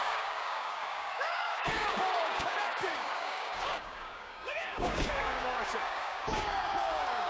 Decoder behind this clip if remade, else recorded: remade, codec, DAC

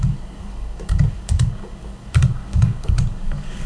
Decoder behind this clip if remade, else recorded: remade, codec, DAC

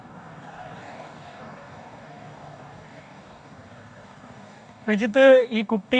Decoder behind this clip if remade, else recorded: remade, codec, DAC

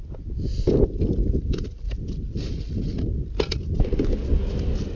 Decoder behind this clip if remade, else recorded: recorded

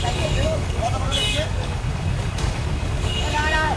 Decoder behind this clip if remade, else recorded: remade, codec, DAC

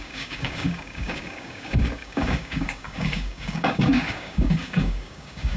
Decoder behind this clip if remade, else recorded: remade, codec, DAC